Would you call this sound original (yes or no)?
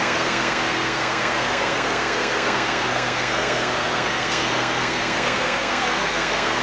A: no